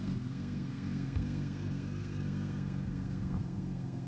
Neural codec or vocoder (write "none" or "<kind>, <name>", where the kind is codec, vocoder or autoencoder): codec, SNAC